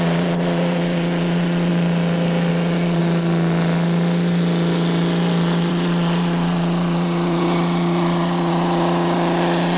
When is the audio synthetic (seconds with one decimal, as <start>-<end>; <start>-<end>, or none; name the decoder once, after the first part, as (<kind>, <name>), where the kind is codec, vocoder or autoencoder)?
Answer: 0.0-1.7 (vocoder, Vocos); 2.5-3.0; 5.7-9.8